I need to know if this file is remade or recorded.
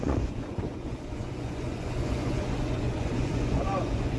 remade